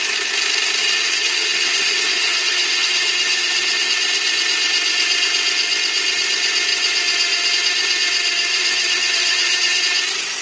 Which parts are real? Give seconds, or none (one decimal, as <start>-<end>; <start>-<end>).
0.0-0.8; 3.9-8.5; 9.8-10.4